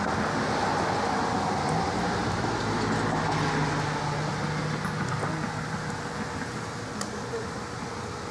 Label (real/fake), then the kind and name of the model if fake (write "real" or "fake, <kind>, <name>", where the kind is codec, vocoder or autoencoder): real